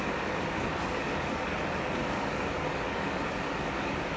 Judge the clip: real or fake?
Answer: fake